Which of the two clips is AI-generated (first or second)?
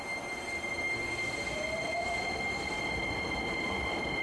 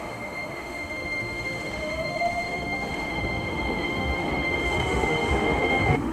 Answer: second